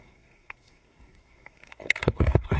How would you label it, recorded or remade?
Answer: remade